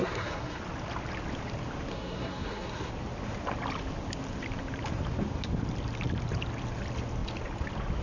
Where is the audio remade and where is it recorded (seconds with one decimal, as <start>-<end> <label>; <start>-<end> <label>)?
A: 0.0-0.6 remade; 0.6-1.9 recorded; 1.9-2.9 remade; 2.9-8.0 recorded